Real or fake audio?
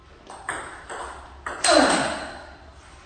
real